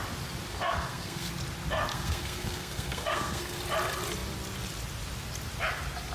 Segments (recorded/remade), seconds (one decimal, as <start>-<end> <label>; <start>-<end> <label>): 0.0-0.5 recorded; 0.5-1.3 remade; 1.3-1.9 recorded; 1.9-3.6 remade; 3.6-6.1 recorded